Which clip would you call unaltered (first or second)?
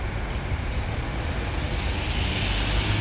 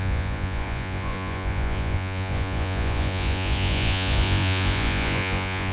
first